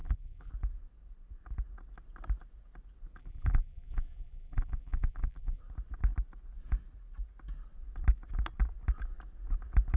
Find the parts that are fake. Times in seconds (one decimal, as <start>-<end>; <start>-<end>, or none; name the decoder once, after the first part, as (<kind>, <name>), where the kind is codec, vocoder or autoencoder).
0.0-0.5 (vocoder, BigVGAN v2); 3.2-5.6